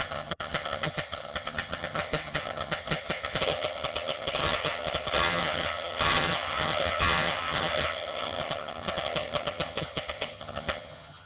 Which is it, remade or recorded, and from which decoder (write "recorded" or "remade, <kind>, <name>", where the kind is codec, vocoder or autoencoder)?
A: remade, vocoder, HiFi-GAN